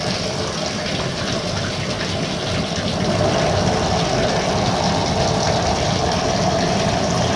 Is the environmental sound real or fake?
real